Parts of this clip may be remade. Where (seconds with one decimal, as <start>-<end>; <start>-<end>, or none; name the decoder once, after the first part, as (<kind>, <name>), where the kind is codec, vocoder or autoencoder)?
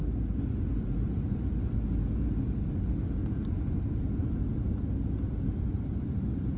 none